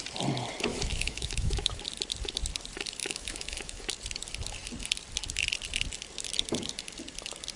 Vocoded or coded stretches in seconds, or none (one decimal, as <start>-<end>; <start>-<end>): 0.7-1.8; 3.0-3.9